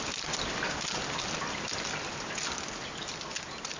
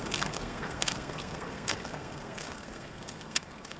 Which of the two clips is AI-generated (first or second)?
second